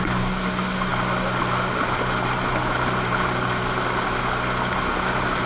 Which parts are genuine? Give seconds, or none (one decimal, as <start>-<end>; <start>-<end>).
0.0-5.5